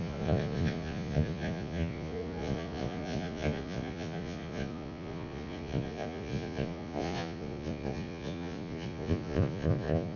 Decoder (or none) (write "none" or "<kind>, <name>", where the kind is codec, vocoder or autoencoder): vocoder, Vocos